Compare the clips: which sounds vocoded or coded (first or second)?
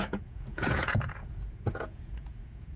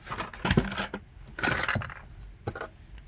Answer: first